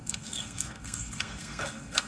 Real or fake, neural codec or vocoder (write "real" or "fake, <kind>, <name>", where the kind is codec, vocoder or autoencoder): fake, codec, SNAC